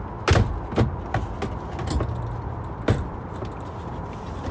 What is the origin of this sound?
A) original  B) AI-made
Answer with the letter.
A